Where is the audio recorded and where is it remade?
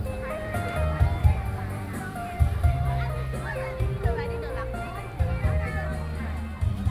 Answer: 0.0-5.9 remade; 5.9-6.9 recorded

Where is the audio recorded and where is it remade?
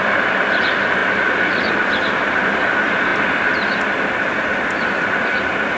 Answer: 0.0-1.0 recorded; 1.0-1.7 remade; 1.7-5.8 recorded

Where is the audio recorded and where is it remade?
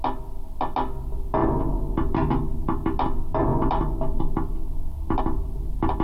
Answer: 0.0-6.0 recorded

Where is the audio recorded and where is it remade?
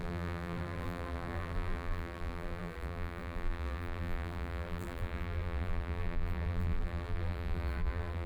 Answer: 0.0-8.3 remade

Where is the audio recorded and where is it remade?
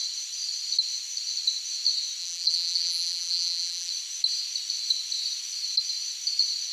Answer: 0.0-2.2 recorded; 2.2-3.9 remade; 3.9-6.7 recorded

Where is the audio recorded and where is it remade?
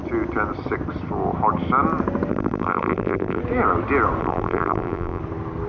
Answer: 0.0-2.3 recorded; 2.3-3.4 remade; 3.4-4.2 recorded; 4.2-5.2 remade; 5.2-5.7 recorded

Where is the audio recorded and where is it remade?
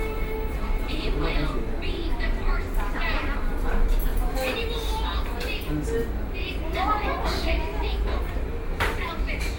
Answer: 0.0-4.1 remade; 4.1-8.0 recorded; 8.0-9.6 remade